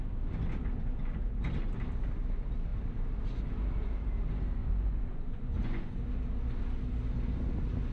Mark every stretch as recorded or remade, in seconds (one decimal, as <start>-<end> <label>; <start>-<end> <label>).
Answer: 0.0-4.6 recorded; 4.6-6.0 remade; 6.0-7.9 recorded